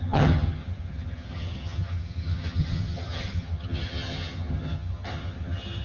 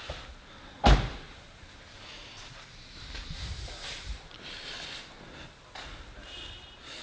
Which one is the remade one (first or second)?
first